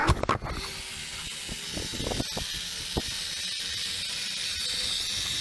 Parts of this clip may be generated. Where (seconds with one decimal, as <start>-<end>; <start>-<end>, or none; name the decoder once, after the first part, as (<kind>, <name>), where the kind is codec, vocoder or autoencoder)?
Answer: none